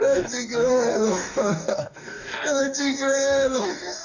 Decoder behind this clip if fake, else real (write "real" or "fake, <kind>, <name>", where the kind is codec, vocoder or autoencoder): fake, codec, DAC